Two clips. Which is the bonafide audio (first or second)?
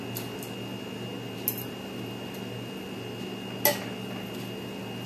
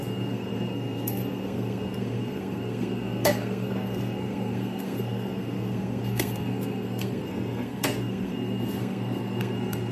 first